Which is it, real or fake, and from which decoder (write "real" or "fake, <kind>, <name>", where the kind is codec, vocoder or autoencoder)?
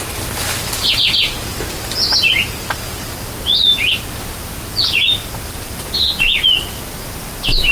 real